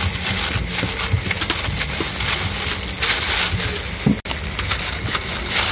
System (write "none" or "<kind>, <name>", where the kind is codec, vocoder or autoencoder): none